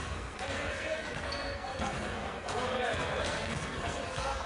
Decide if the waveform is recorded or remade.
remade